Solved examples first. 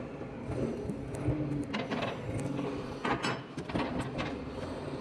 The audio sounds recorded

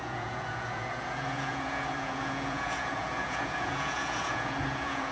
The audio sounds remade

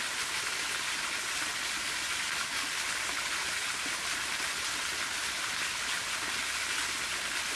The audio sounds recorded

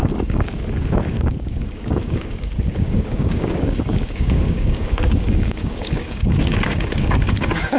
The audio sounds remade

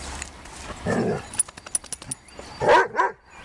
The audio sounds recorded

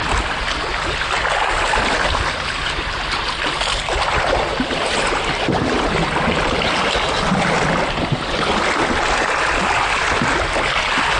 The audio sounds recorded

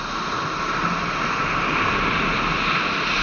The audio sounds recorded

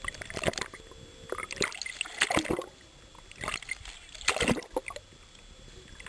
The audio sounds recorded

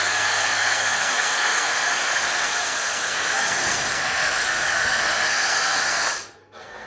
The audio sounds remade